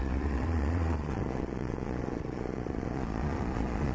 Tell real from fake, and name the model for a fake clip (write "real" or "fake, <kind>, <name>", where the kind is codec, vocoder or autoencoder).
fake, vocoder, Vocos